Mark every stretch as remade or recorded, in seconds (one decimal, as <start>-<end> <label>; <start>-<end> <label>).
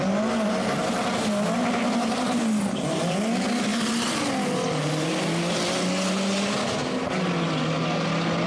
0.0-8.5 recorded